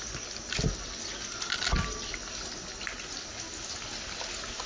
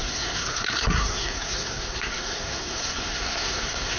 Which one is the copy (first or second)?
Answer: second